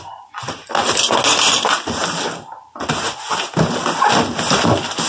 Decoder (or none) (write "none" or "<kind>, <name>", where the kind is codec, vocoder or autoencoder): none